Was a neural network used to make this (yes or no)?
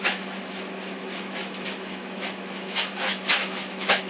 yes